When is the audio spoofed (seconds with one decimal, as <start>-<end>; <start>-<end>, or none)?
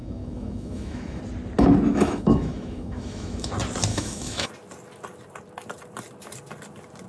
0.0-1.2; 1.9-3.5; 3.9-4.5